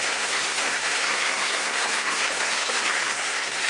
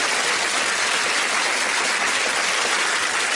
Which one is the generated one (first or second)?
first